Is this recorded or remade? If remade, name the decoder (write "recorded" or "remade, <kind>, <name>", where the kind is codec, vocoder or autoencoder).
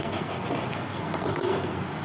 remade, codec, SNAC